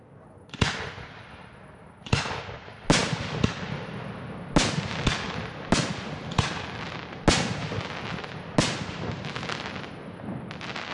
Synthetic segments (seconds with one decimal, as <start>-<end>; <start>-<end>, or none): none

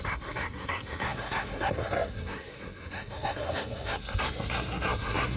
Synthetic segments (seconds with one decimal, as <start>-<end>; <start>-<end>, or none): 0.0-5.4

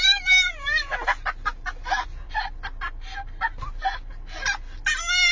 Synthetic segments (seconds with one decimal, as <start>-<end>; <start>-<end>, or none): none

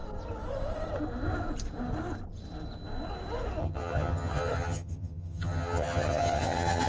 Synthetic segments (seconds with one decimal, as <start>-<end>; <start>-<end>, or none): 3.6-6.9